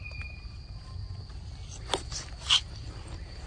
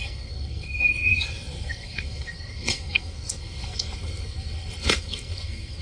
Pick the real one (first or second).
first